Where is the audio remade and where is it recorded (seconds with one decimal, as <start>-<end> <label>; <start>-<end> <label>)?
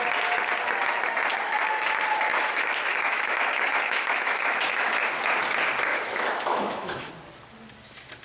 0.0-1.3 recorded; 1.3-1.8 remade; 1.8-2.3 recorded; 2.3-4.9 remade; 4.9-5.9 recorded; 5.9-7.1 remade; 7.1-8.2 recorded